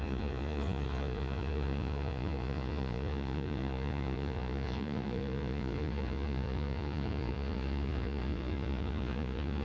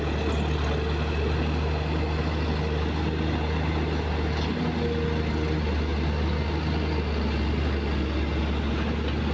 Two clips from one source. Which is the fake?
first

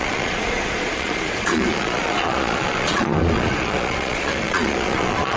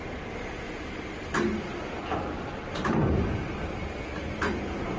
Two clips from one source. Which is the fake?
first